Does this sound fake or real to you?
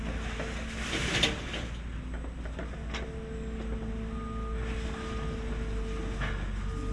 real